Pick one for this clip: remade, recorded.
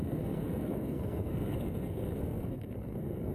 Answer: remade